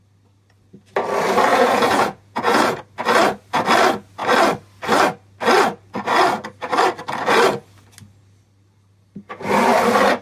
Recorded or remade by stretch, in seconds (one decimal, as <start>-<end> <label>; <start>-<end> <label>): 0.0-1.5 recorded; 1.5-2.8 remade; 2.8-10.2 recorded